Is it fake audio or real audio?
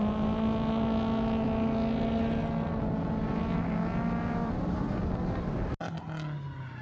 real